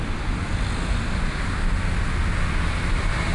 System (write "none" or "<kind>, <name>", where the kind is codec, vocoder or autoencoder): none